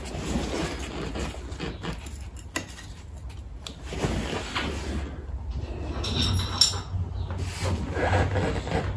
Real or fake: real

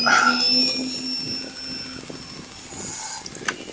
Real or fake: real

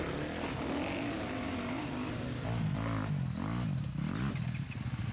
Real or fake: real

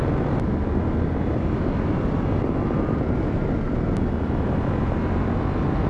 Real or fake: real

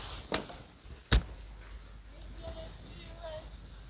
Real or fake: real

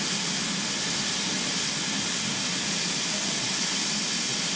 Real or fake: real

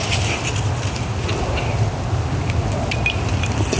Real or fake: real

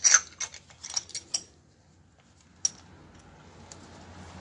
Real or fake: real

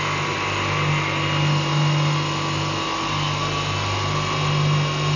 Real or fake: real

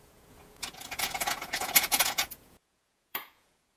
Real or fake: fake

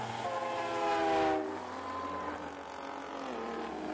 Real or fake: real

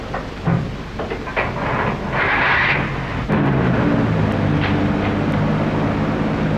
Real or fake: real